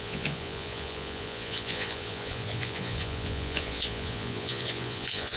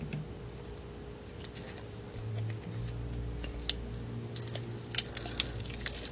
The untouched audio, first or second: second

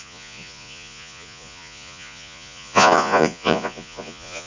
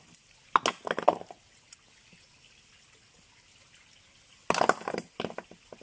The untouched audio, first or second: second